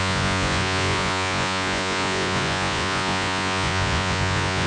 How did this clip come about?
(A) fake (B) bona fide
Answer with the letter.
A